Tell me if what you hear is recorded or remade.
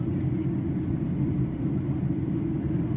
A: recorded